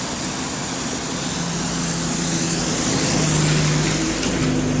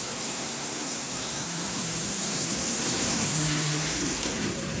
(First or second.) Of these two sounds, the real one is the first